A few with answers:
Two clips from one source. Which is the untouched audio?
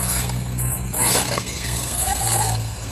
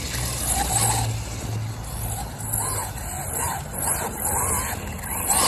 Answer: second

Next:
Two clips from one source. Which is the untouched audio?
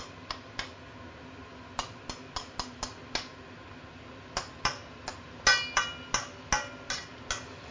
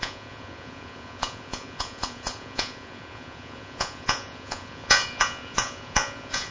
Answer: first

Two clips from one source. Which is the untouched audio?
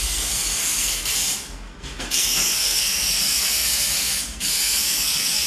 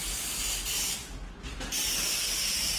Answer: second